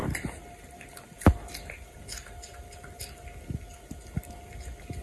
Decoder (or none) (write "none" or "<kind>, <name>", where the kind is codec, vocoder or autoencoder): none